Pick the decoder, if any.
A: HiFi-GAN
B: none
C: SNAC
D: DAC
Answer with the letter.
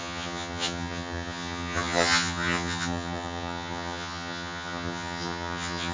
A